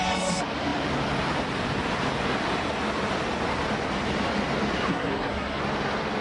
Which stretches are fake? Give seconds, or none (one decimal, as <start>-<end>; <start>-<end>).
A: 4.9-5.6